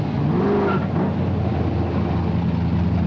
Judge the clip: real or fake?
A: real